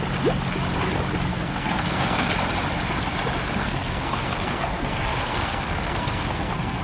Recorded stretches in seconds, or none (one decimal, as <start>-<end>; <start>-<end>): 0.0-1.3; 2.3-3.6